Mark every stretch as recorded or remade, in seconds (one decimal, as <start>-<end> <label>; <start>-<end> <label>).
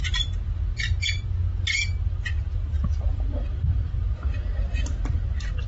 0.0-5.7 recorded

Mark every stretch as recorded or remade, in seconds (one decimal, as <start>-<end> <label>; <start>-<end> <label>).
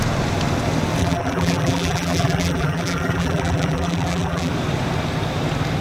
0.0-1.0 recorded; 1.0-4.5 remade; 4.5-5.8 recorded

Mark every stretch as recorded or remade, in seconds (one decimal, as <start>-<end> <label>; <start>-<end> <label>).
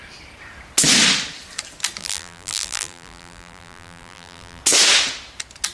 0.0-2.0 recorded; 2.0-4.6 remade; 4.6-5.7 recorded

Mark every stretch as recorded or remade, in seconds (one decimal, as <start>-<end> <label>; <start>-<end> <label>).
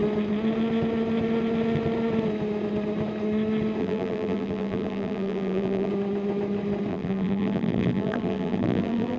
0.0-3.8 recorded; 3.8-5.9 remade; 5.9-6.9 recorded; 6.9-9.2 remade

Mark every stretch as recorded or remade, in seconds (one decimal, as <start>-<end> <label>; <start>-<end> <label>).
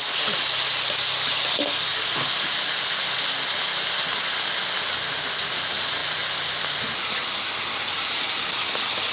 0.0-6.0 recorded; 6.0-8.4 remade; 8.4-9.1 recorded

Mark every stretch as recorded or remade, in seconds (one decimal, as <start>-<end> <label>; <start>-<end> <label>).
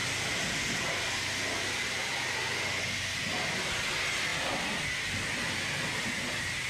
0.0-6.7 recorded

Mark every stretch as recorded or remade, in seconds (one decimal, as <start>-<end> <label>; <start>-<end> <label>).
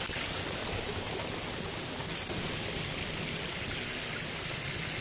0.0-0.6 recorded; 0.6-3.6 remade; 3.6-5.0 recorded